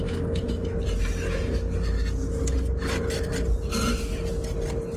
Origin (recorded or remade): recorded